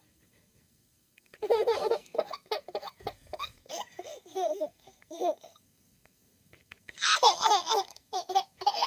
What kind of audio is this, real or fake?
fake